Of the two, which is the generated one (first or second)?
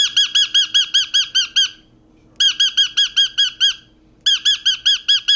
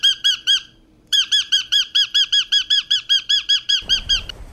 second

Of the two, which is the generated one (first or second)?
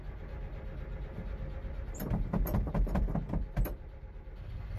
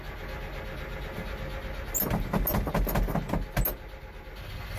first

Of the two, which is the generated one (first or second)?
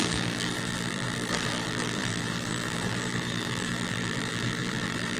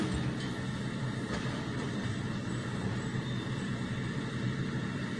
first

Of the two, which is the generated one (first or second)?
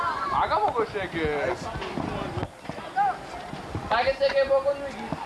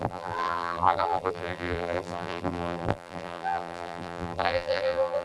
second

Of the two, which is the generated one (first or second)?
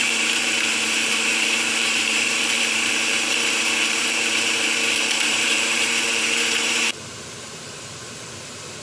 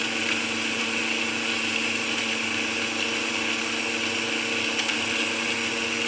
first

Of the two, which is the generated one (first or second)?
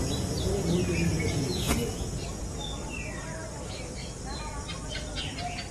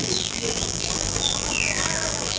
second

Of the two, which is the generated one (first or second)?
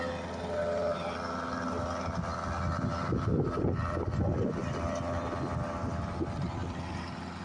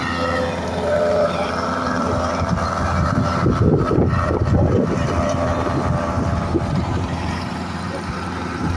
second